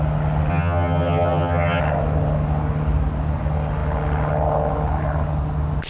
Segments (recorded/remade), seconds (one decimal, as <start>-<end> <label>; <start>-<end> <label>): 0.0-0.5 recorded; 0.5-1.8 remade; 1.8-5.9 recorded

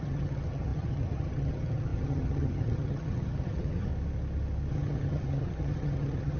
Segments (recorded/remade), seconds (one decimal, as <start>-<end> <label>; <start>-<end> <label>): 0.0-3.9 remade; 3.9-4.7 recorded; 4.7-6.4 remade

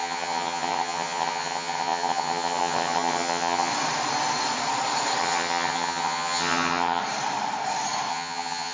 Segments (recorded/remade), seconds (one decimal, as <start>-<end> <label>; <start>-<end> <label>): 0.0-3.7 remade; 3.7-5.2 recorded; 5.2-7.0 remade; 7.0-8.1 recorded; 8.1-8.7 remade